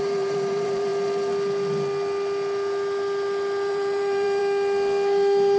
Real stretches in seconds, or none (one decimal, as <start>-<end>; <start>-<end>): 0.9-3.7; 4.4-5.6